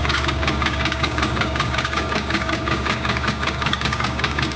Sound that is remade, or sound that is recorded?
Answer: remade